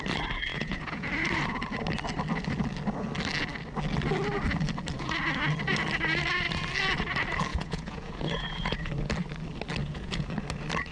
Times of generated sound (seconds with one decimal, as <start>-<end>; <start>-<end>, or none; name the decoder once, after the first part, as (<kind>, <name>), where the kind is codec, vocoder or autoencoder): 0.5-1.1 (vocoder, Vocos); 7.5-8.9; 9.8-10.3